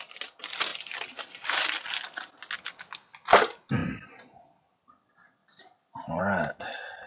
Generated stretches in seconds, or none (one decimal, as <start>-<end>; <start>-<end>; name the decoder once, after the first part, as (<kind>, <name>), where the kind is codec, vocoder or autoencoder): 5.4-6.2 (vocoder, BigVGAN v2)

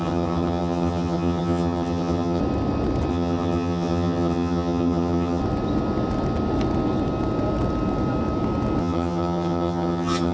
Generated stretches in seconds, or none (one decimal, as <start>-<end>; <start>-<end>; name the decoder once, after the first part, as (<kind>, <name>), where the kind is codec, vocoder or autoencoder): 0.0-2.4 (vocoder, HiFi-GAN); 3.1-5.4; 8.8-10.3

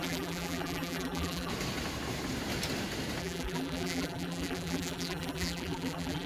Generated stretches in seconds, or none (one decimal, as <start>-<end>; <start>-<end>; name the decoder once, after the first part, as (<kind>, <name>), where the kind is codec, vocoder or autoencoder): 0.0-1.5 (vocoder, BigVGAN v2); 3.2-6.3

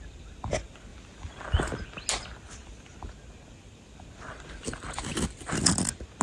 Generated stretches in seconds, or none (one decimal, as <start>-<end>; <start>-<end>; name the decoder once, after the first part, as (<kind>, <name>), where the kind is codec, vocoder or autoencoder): none

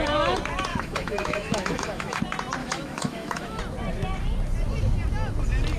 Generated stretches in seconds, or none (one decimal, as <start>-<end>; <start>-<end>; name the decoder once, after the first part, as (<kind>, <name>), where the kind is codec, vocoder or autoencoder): 0.7-2.2 (autoencoder, DAC-VAE); 2.6-3.6

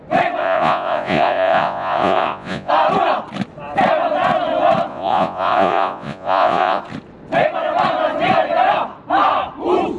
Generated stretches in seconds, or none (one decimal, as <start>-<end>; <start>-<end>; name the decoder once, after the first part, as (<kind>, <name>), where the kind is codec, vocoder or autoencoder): 0.4-2.7 (vocoder, Vocos); 4.9-6.8

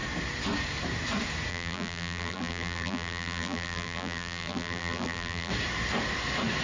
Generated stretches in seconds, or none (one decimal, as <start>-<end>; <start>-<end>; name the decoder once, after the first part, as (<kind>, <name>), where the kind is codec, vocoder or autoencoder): 1.5-5.5 (vocoder, BigVGAN v2)

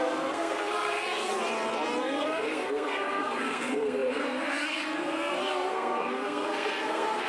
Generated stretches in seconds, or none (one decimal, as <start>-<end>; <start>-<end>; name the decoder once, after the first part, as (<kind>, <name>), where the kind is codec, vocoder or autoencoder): 0.0-1.3 (codec, SNAC); 2.0-7.3